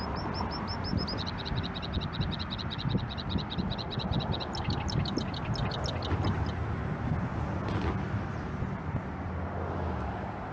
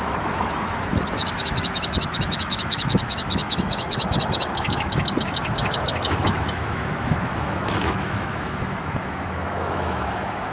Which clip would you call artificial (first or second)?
second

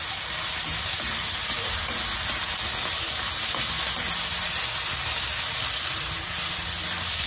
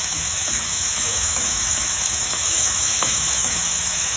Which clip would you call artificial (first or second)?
second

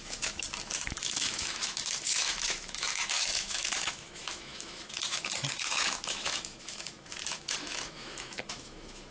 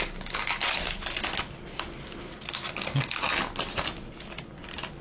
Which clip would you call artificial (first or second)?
first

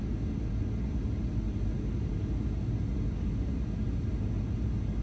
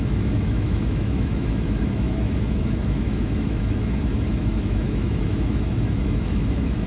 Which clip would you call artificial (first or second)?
second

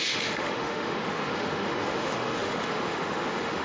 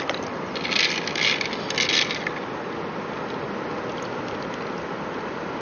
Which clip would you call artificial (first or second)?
first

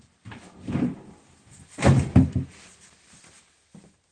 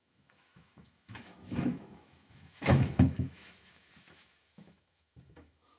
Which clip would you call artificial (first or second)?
second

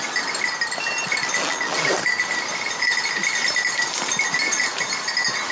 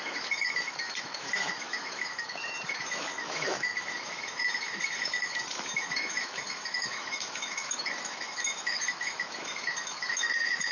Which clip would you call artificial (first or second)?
second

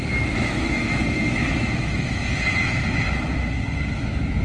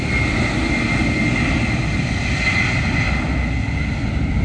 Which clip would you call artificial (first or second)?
first